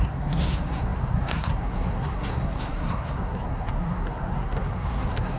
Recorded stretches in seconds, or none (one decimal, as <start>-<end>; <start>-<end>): none